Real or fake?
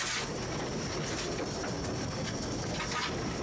real